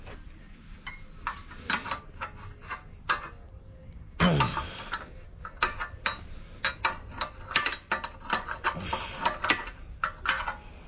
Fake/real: real